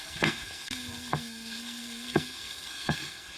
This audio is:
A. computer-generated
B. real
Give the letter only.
A